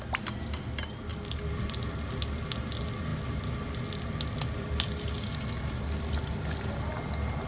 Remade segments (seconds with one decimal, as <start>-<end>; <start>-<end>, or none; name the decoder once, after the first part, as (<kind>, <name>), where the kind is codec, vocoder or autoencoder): none

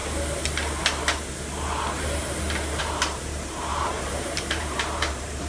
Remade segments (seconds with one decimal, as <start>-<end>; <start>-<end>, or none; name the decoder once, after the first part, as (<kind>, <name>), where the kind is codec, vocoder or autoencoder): 2.8-5.5 (vocoder, BigVGAN v2)

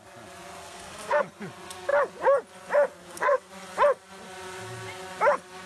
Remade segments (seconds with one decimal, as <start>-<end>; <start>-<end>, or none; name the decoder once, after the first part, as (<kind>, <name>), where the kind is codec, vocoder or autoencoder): 0.6-1.2 (codec, SNAC); 3.0-3.5

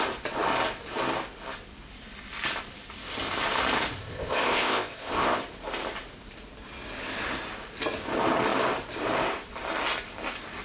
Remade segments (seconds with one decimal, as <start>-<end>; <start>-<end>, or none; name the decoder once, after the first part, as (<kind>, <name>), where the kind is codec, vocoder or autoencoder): 4.0-5.4 (codec, ZipCodec)

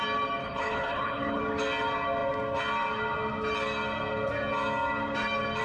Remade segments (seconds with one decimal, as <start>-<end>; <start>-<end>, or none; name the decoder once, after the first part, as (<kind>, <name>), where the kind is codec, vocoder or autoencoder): 0.4-1.4 (codec, HILCodec)

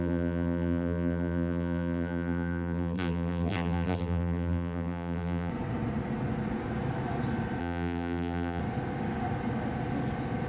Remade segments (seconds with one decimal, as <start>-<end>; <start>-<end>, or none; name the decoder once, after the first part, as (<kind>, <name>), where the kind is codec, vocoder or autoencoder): 0.0-5.5 (vocoder, BigVGAN v2); 7.6-8.6

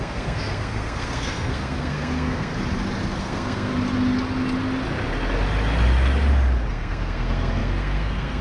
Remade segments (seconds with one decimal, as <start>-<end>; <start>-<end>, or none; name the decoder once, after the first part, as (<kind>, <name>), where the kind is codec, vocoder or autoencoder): 0.0-2.5 (codec, SNAC); 3.2-3.7; 6.7-8.4